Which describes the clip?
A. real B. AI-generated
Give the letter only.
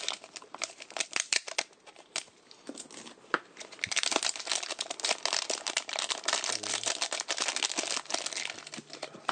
A